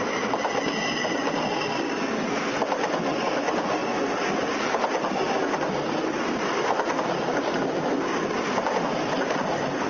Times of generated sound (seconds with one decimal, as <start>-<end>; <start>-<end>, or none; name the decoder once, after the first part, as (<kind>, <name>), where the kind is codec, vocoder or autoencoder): none

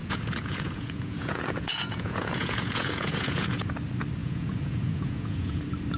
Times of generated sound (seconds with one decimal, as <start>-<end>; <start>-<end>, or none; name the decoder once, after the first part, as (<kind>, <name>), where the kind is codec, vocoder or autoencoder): 0.0-3.6 (vocoder, Vocos); 4.2-5.6

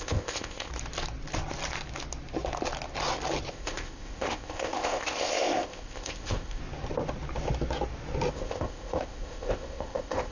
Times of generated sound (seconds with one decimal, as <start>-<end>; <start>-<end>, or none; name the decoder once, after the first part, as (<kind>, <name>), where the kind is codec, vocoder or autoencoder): 0.0-0.7 (codec, ZipCodec); 3.5-6.6; 8.3-10.3